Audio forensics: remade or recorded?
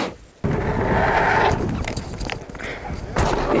recorded